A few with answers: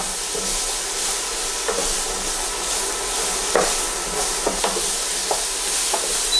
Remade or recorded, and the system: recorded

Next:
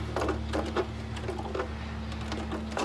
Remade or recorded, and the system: recorded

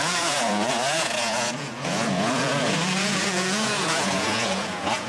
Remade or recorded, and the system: remade, vocoder, Vocos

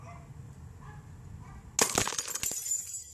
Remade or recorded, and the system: recorded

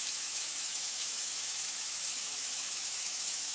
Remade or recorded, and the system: remade, autoencoder, DAC-VAE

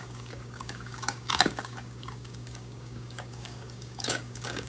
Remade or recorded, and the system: remade, codec, DAC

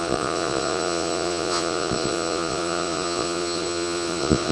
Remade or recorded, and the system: remade, vocoder, Vocos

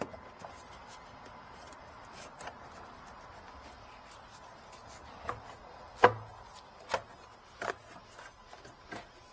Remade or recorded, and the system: recorded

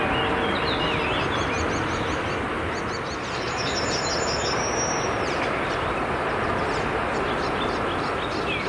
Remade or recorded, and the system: recorded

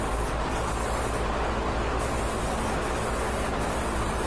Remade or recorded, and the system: recorded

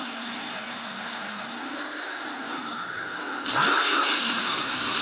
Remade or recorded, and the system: remade, codec, SNAC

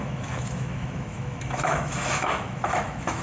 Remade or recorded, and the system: remade, autoencoder, DAC-VAE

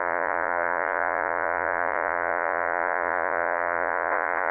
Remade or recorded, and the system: remade, vocoder, Vocos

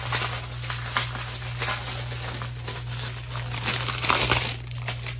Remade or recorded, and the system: recorded